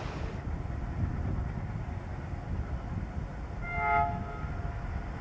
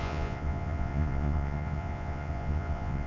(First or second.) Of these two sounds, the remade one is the second